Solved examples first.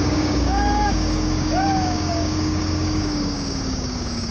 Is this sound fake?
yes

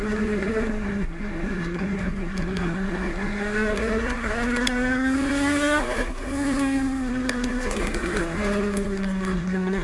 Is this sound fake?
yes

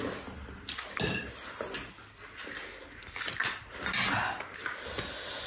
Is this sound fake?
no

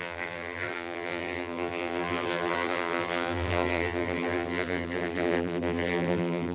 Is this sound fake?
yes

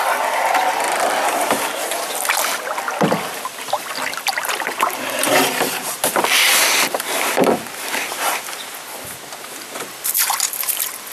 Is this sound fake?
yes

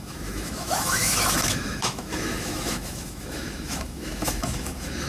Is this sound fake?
yes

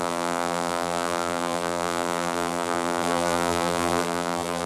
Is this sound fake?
yes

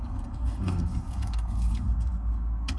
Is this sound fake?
yes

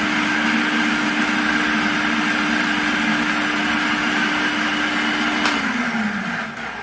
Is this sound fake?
no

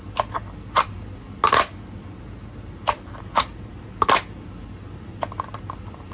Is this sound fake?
no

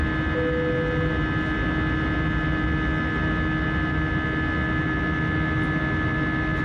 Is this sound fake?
no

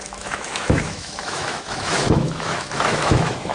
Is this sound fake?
yes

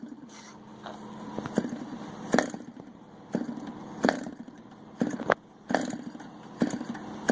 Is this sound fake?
no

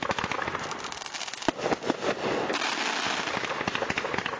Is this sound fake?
no